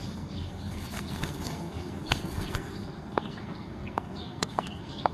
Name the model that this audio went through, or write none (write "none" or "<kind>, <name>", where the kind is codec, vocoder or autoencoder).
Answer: codec, SNAC